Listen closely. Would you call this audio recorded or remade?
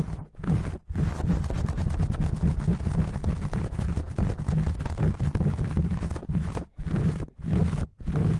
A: recorded